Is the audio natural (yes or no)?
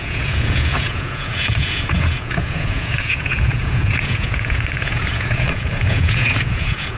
no